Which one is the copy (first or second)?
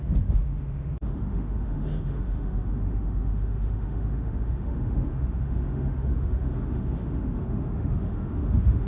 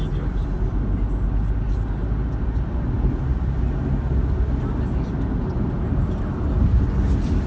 first